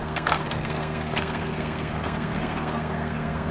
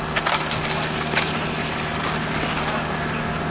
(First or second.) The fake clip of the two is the first